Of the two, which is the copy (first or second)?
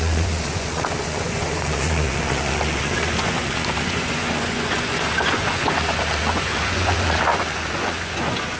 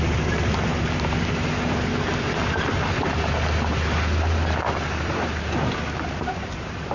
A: first